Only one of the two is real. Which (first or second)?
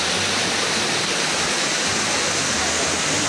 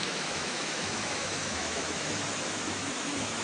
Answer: first